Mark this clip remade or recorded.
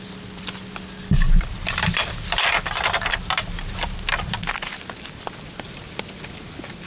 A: recorded